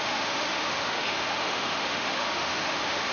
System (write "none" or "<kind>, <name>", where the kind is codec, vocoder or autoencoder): autoencoder, DAC-VAE